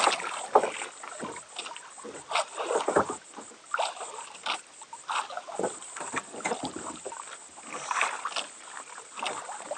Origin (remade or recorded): recorded